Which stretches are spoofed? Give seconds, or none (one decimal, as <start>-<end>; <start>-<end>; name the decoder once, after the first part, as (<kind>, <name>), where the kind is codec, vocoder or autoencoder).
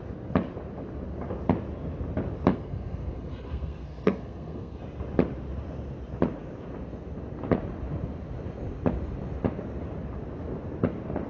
2.5-4.8 (codec, SNAC)